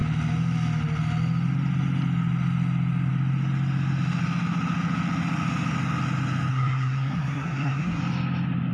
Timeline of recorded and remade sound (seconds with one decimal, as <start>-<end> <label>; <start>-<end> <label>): 0.0-6.5 recorded; 6.5-8.0 remade; 8.0-8.7 recorded